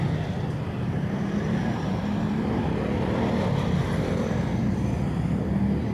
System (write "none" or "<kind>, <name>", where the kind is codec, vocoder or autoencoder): vocoder, BigVGAN v2